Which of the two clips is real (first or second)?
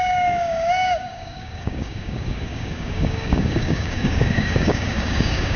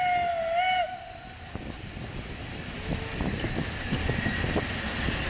second